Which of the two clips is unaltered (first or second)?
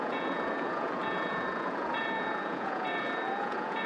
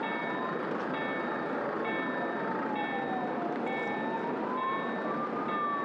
second